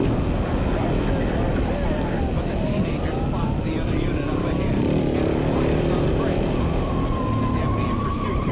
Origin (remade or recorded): recorded